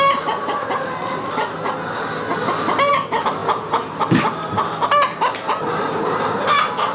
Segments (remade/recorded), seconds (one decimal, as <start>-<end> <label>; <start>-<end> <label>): 0.0-6.9 recorded